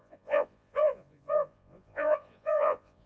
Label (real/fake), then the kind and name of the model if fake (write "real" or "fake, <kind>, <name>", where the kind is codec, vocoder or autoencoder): fake, vocoder, Vocos